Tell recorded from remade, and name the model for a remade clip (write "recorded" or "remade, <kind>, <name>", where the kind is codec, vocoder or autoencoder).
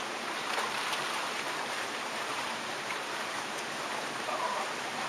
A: remade, vocoder, BigVGAN v2